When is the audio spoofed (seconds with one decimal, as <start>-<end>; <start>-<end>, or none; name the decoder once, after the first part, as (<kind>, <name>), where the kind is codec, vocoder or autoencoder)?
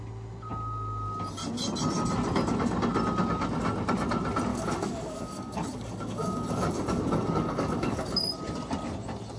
4.5-8.2 (codec, DAC)